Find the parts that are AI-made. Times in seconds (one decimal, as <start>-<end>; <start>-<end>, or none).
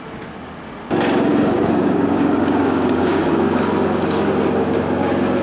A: 1.3-3.3